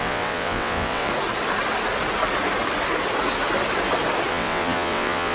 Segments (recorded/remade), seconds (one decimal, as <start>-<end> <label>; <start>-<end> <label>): 0.0-1.1 remade; 1.1-4.3 recorded; 4.3-5.3 remade